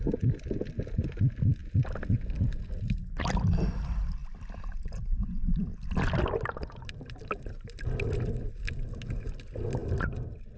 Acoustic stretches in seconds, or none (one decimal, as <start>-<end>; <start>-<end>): 0.0-10.6